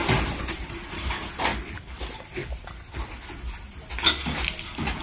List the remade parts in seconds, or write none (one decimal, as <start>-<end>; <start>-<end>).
0.5-1.5; 2.0-2.4